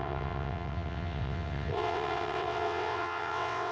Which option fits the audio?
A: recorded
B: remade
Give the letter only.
B